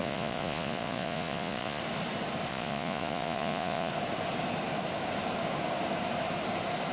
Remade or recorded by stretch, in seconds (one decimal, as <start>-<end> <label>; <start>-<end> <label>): 0.0-1.8 remade; 1.8-2.5 recorded; 2.5-3.9 remade; 3.9-6.9 recorded